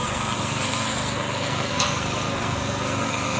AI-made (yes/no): yes